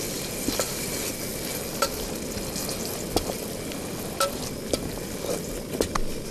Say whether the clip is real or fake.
real